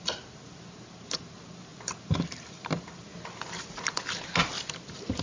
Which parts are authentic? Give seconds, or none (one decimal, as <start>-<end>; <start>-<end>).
0.0-5.2